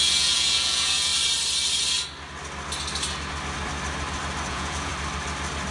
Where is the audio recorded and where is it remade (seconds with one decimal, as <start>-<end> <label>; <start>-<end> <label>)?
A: 0.0-1.1 remade; 1.1-4.5 recorded; 4.5-4.9 remade; 4.9-5.7 recorded